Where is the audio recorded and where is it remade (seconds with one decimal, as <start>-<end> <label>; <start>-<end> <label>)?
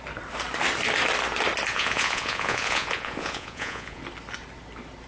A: 0.0-1.7 recorded; 1.7-4.0 remade; 4.0-5.1 recorded